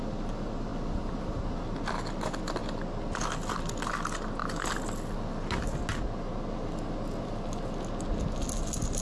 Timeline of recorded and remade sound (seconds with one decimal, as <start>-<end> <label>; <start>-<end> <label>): 0.0-9.0 recorded